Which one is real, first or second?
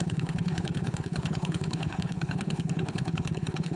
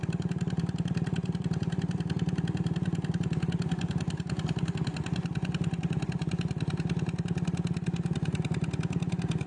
second